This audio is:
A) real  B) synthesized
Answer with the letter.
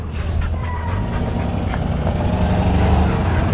A